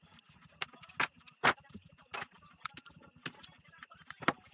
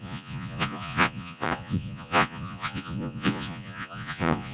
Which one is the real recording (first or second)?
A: first